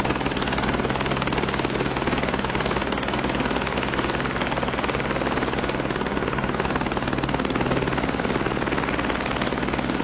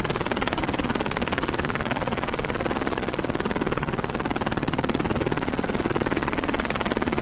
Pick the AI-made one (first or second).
second